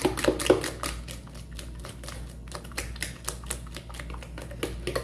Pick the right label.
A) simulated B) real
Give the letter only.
B